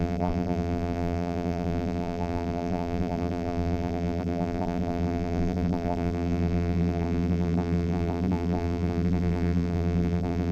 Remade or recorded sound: remade